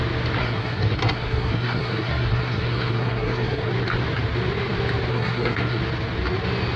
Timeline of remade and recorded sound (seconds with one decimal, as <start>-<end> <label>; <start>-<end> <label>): 0.0-0.4 recorded; 0.4-3.7 remade; 3.7-5.1 recorded; 5.1-5.8 remade; 5.8-6.8 recorded